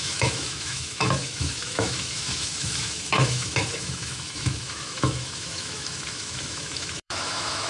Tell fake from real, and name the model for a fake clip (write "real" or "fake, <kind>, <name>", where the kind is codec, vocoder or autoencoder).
fake, autoencoder, DAC-VAE